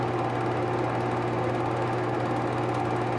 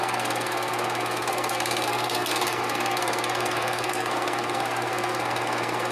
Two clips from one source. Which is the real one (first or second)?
first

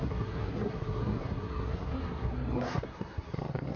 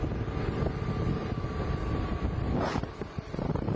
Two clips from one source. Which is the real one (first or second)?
second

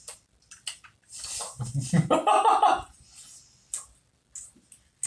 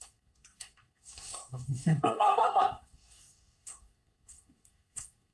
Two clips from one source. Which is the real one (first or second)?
first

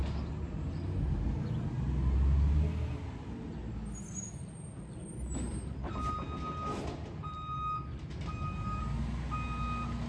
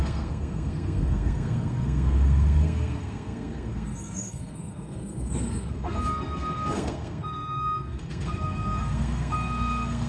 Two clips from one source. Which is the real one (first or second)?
first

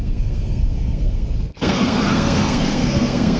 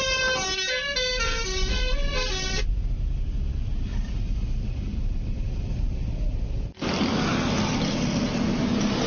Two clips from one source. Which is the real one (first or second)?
second